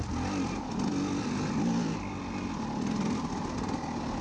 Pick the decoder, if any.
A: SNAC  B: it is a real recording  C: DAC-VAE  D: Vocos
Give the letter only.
B